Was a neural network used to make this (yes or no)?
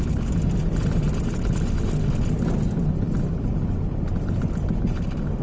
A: no